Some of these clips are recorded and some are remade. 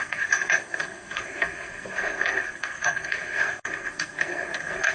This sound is remade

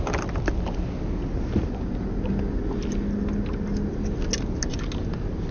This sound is recorded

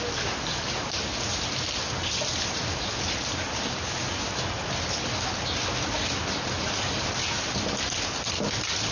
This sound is recorded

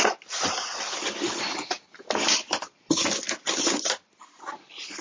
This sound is recorded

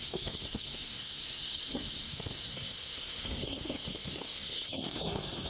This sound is remade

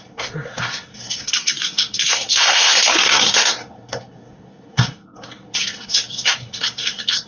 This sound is remade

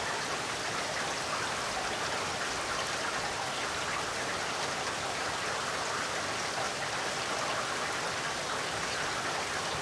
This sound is recorded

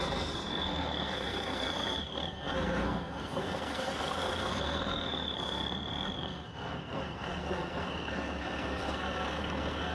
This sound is remade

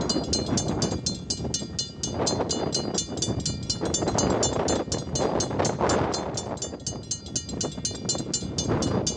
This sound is recorded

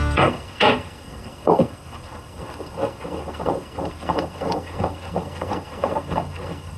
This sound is remade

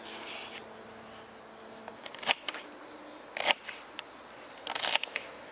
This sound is recorded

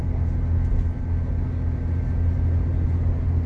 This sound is recorded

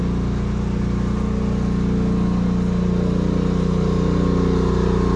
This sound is recorded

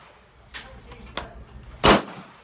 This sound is recorded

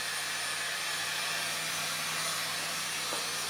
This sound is recorded